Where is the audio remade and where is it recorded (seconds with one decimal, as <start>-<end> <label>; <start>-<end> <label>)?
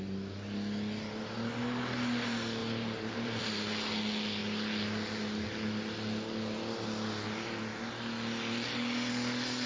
0.0-2.6 recorded; 2.6-3.4 remade; 3.4-9.7 recorded